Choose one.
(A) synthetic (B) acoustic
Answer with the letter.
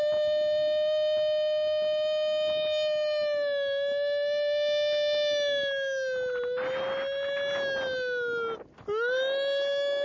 B